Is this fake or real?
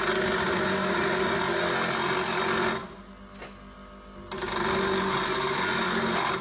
real